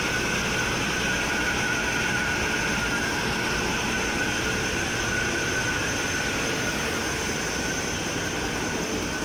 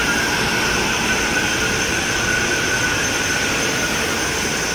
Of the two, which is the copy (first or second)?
second